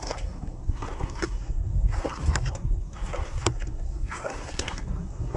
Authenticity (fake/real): fake